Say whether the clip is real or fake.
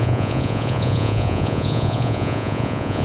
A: fake